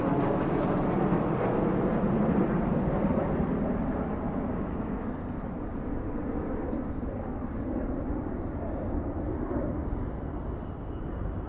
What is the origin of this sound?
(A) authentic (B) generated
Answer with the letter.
A